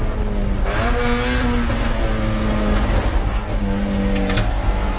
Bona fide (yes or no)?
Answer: yes